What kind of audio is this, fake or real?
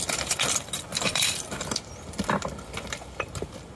fake